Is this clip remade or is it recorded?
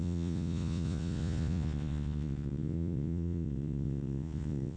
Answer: remade